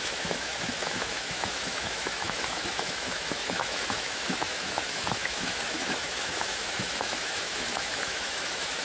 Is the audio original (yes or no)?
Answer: no